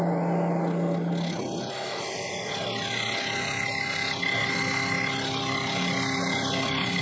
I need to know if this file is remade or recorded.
recorded